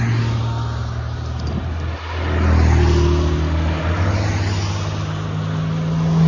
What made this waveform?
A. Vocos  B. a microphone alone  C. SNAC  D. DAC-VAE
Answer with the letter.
B